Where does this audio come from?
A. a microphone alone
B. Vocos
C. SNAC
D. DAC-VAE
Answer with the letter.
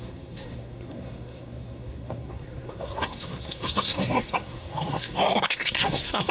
C